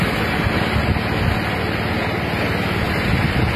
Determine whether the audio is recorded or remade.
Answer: recorded